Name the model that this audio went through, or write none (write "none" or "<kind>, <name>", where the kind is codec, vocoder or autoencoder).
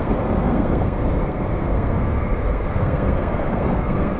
codec, SNAC